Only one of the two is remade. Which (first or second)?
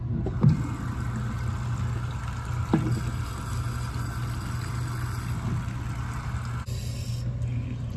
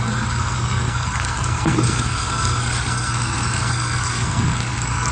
second